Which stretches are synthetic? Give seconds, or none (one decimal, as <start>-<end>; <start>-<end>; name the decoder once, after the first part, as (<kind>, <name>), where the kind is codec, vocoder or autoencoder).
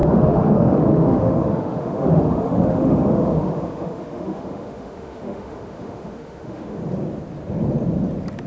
0.0-6.8 (autoencoder, DAC-VAE)